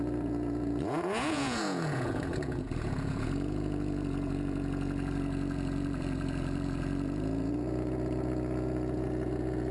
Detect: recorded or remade remade